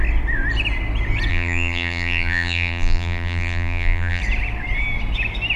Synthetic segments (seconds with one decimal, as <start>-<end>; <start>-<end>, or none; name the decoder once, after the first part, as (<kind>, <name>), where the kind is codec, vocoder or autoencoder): 1.3-4.2 (vocoder, BigVGAN v2)